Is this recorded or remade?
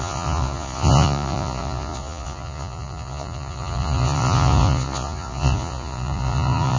remade